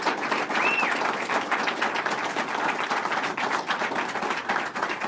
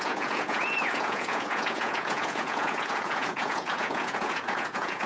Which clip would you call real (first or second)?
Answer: first